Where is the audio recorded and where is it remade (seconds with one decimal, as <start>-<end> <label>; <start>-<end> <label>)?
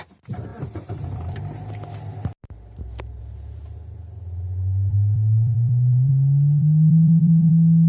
0.0-0.5 recorded; 0.5-1.7 remade; 1.7-4.9 recorded; 4.9-6.1 remade; 6.1-6.6 recorded; 6.6-7.5 remade; 7.5-7.9 recorded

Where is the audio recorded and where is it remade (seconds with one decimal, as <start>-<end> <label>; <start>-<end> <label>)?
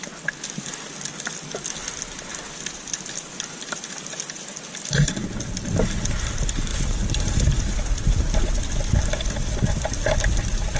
0.0-2.3 recorded; 2.3-5.3 remade; 5.3-10.8 recorded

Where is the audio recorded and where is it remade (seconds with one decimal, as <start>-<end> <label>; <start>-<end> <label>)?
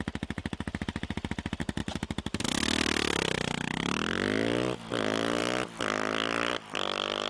0.0-0.4 recorded; 0.4-1.3 remade; 1.3-7.3 recorded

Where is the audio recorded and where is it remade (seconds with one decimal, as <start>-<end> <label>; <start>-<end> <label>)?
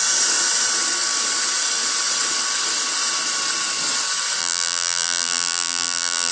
0.0-4.4 recorded; 4.4-6.3 remade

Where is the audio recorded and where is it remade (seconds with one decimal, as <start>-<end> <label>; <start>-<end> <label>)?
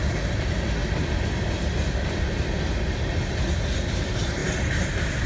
0.0-5.3 recorded